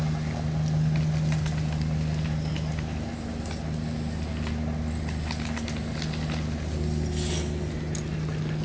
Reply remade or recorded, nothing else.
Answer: recorded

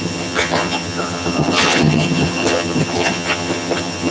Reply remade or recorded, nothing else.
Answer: remade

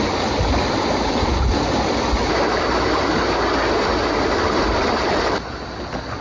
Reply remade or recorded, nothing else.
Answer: recorded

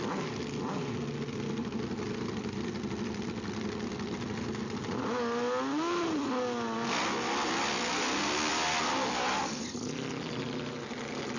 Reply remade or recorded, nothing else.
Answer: recorded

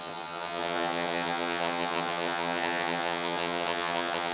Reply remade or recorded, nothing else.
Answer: remade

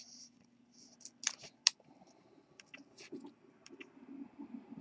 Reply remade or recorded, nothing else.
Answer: recorded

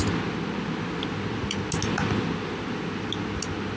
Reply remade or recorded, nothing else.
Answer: recorded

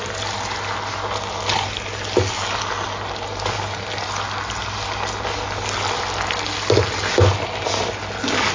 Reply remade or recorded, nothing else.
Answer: recorded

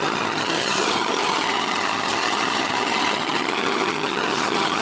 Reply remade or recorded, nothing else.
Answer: remade